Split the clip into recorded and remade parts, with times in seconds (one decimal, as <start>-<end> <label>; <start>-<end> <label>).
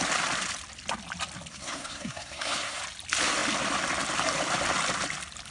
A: 0.0-1.5 recorded; 1.5-2.8 remade; 2.8-5.5 recorded